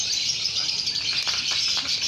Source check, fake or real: fake